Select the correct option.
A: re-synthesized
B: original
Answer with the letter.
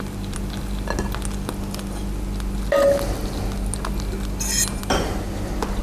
B